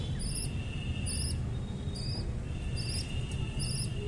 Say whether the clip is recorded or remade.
recorded